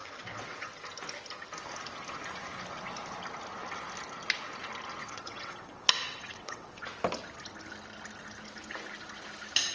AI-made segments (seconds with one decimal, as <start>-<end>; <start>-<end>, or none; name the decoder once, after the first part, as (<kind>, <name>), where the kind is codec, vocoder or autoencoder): 0.0-0.7 (vocoder, WaveNeXt); 5.0-6.8

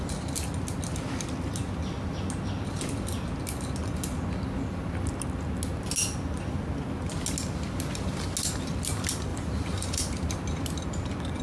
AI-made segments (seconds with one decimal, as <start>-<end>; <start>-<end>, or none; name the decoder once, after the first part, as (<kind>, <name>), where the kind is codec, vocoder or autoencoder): 9.3-10.3 (vocoder, BigVGAN v2)

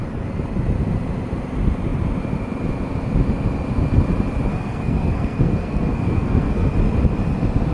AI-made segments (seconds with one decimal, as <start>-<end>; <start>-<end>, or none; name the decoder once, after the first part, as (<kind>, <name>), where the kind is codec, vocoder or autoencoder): 4.5-6.7 (codec, SNAC)